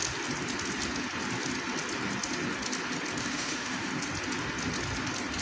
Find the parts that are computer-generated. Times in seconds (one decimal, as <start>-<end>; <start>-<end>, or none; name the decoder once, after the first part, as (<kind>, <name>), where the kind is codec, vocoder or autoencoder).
3.2-3.9 (autoencoder, DAC-VAE)